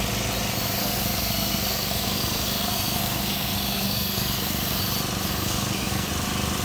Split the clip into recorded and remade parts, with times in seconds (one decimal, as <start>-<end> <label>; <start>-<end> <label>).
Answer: 0.0-0.8 recorded; 0.8-4.8 remade; 4.8-5.3 recorded; 5.3-6.1 remade; 6.1-6.6 recorded